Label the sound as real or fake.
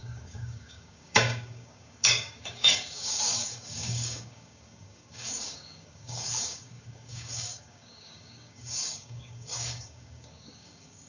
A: fake